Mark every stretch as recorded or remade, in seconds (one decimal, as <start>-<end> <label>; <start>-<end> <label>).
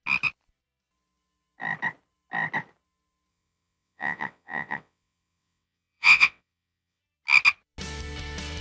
0.0-3.3 recorded; 3.3-7.0 remade; 7.0-8.6 recorded